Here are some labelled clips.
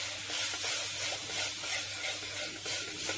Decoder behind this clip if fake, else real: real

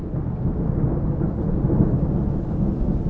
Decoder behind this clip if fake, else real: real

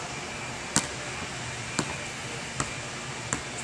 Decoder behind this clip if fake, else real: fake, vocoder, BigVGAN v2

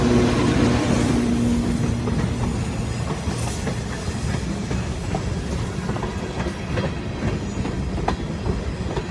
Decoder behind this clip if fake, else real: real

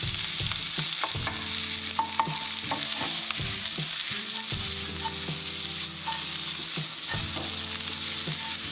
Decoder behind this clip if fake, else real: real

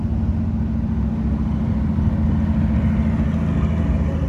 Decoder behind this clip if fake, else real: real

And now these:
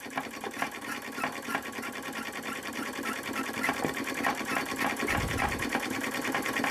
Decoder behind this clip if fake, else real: fake, vocoder, BigVGAN v2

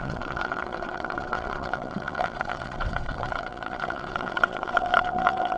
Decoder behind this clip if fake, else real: fake, vocoder, WaveNeXt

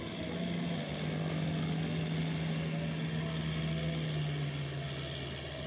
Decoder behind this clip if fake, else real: real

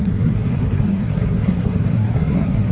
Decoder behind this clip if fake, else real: fake, codec, SNAC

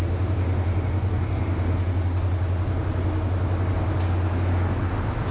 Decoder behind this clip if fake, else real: real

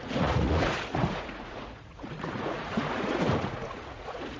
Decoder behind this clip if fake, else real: fake, vocoder, Vocos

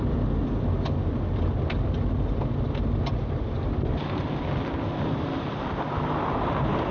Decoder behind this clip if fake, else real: real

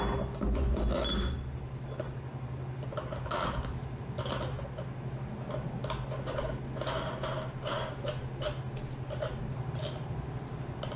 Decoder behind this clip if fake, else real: real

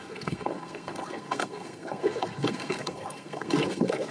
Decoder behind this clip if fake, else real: fake, codec, SNAC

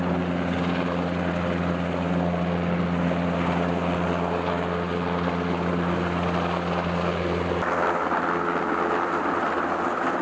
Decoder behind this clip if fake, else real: real